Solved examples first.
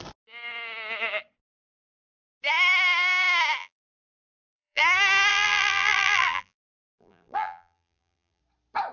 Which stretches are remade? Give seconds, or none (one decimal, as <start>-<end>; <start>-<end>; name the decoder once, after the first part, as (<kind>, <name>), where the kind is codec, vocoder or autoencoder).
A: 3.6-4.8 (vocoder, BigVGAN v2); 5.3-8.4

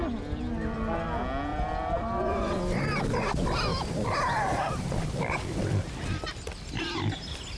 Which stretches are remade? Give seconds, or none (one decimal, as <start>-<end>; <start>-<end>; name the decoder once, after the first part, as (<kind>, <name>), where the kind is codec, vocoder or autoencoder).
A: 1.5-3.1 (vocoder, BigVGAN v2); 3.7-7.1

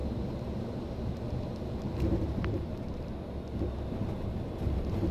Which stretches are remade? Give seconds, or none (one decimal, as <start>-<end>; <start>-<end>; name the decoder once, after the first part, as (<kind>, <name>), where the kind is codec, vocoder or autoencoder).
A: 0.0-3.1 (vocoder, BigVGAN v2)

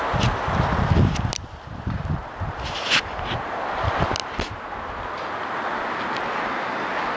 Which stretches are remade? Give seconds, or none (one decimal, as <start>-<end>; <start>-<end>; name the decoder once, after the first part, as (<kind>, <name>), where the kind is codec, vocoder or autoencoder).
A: 2.2-2.8 (vocoder, BigVGAN v2)